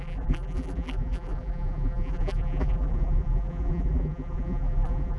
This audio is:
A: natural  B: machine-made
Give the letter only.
B